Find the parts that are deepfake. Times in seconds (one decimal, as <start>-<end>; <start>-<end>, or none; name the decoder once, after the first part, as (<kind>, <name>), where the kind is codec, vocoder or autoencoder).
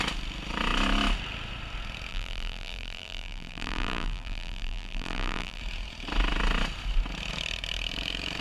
2.1-5.6 (vocoder, BigVGAN v2)